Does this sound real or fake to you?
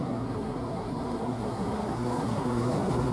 fake